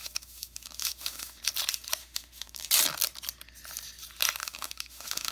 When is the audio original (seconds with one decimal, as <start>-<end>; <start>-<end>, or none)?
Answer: 1.4-2.0; 2.7-4.4